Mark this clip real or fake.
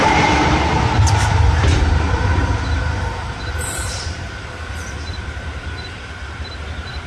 fake